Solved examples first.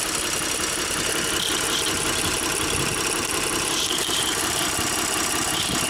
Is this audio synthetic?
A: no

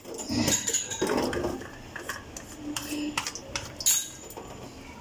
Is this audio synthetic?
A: no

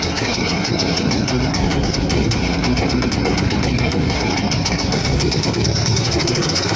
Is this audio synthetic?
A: yes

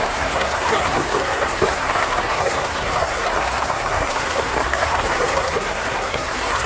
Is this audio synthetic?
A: yes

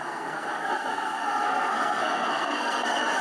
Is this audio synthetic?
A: yes